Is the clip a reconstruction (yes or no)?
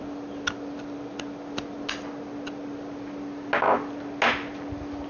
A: no